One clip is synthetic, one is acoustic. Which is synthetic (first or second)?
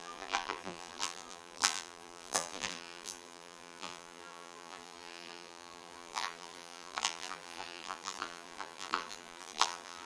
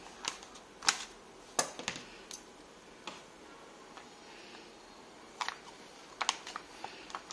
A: first